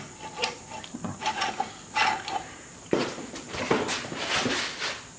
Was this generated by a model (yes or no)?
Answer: no